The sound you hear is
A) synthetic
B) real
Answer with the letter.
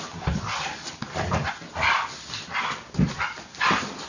B